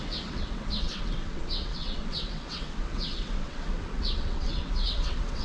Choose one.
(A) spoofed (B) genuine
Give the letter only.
A